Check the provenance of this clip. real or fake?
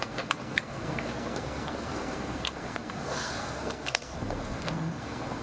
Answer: fake